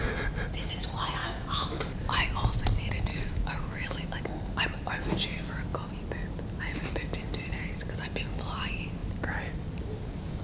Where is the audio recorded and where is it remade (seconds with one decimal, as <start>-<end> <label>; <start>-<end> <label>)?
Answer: 0.0-1.2 recorded; 1.2-1.8 remade; 1.8-3.1 recorded; 3.1-4.2 remade; 4.2-10.4 recorded